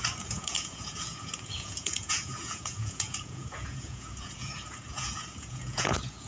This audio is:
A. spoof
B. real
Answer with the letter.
A